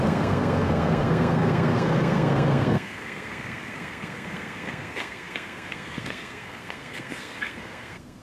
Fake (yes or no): yes